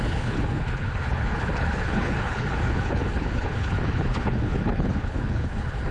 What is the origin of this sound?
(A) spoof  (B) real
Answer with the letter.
A